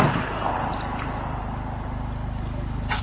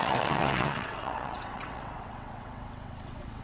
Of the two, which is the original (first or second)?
first